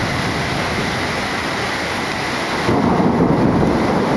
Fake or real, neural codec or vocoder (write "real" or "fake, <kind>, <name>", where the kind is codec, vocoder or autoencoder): real